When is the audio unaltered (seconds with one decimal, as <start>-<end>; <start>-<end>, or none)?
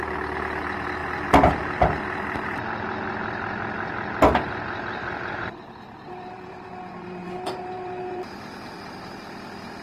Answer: 0.0-1.0; 2.6-5.0; 9.2-9.8